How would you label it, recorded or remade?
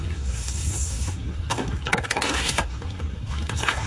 remade